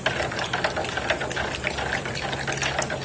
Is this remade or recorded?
recorded